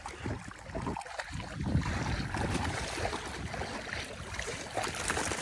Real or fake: fake